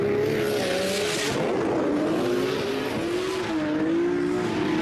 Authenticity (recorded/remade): recorded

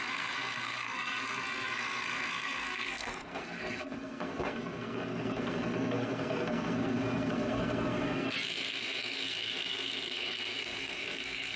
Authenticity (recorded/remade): remade